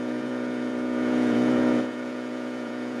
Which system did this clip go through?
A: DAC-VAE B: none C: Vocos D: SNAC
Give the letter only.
C